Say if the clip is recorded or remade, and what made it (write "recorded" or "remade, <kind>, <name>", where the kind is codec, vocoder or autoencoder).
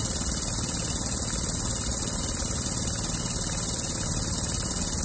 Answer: recorded